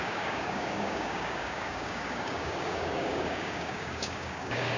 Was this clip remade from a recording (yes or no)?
yes